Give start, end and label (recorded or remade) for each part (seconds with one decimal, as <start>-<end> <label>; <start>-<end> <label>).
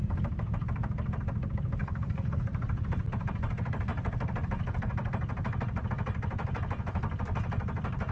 0.0-1.8 recorded; 1.8-2.4 remade; 2.4-8.1 recorded